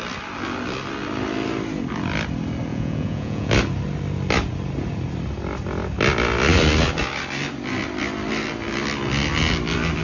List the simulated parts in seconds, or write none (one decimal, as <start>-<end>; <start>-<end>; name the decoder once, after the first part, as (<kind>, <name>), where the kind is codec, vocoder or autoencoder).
2.7-3.5 (vocoder, Vocos)